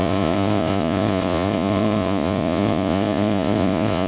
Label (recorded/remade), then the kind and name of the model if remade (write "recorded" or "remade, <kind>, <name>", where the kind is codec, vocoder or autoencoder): remade, vocoder, Vocos